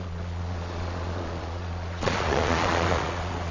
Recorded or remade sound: remade